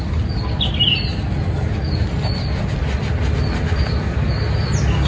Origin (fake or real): real